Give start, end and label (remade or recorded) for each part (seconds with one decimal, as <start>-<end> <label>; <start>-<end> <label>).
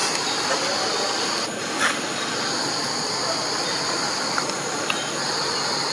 0.0-5.9 recorded